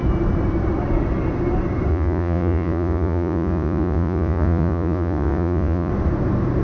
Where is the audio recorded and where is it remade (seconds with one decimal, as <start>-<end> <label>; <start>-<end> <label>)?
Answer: 0.0-1.9 recorded; 1.9-5.9 remade; 5.9-6.6 recorded

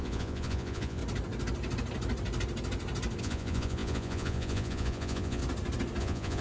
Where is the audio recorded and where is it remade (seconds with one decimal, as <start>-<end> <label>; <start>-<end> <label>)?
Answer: 0.0-1.0 remade; 1.0-3.2 recorded; 3.2-5.4 remade; 5.4-6.0 recorded; 6.0-6.4 remade

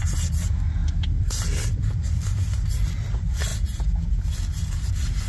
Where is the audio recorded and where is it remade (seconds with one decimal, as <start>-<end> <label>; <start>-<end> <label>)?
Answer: 0.0-3.5 recorded; 3.5-4.1 remade; 4.1-5.3 recorded

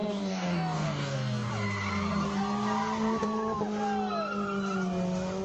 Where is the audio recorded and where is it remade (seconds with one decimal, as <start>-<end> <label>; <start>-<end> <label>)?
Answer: 0.0-1.5 remade; 1.5-5.4 recorded

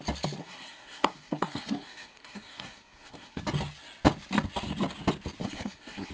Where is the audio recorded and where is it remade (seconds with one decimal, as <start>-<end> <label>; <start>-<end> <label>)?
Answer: 0.0-0.4 recorded; 0.4-3.4 remade; 3.4-5.4 recorded; 5.4-6.1 remade

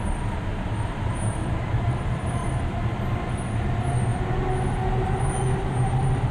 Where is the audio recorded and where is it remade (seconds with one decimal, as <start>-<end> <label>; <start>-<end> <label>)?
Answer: 0.0-0.5 recorded; 0.5-1.5 remade; 1.5-2.4 recorded; 2.4-3.2 remade; 3.2-6.3 recorded

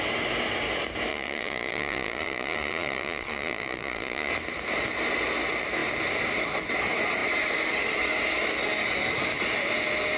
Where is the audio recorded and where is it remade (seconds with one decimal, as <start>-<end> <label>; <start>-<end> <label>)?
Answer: 0.0-1.1 recorded; 1.1-4.3 remade; 4.3-10.2 recorded